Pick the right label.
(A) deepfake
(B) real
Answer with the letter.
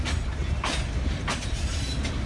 B